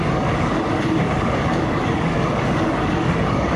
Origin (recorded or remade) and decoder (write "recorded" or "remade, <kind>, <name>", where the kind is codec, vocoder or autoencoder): remade, codec, DAC